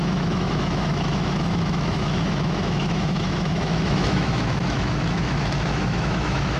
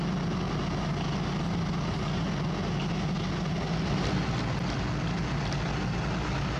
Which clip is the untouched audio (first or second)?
second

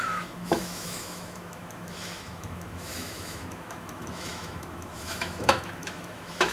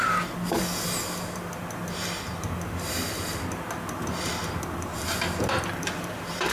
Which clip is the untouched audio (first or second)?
second